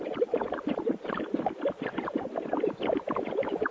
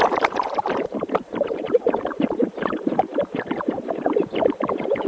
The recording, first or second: first